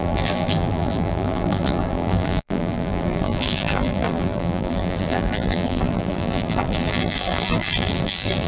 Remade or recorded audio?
remade